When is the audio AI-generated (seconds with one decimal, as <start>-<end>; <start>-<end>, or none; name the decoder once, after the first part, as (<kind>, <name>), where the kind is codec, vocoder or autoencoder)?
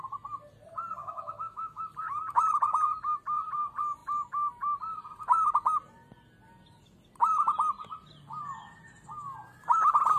1.0-1.8 (autoencoder, DAC-VAE)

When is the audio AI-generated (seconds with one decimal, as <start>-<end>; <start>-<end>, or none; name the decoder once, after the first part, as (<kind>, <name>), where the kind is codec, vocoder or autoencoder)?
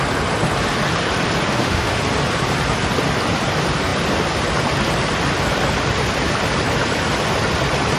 1.5-2.0 (autoencoder, DAC-VAE)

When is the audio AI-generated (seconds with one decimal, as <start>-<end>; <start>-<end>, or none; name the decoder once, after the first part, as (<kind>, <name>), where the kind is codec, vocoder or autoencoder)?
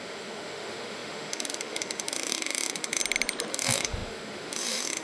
0.0-3.0 (autoencoder, DAC-VAE); 3.5-5.0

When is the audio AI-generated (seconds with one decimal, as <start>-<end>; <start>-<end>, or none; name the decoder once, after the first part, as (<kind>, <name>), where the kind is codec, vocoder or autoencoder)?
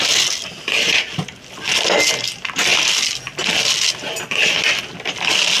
none